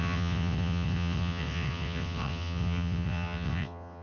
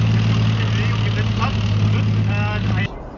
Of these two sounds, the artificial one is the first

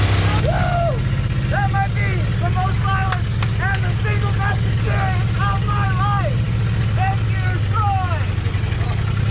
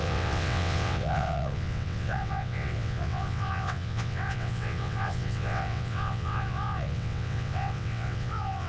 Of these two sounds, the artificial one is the second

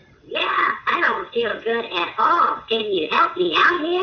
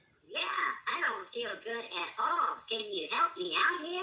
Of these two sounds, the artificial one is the first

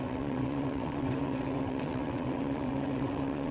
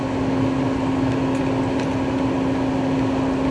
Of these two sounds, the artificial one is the first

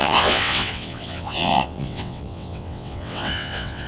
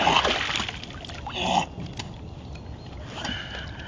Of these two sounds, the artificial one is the first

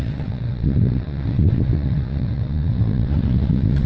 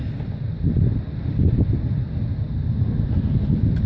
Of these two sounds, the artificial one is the first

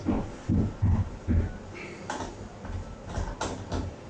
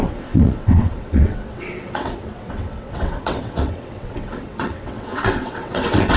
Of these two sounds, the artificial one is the second